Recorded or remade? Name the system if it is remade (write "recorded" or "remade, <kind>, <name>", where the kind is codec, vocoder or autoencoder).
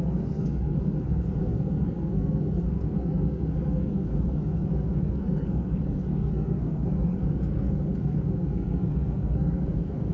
remade, codec, SNAC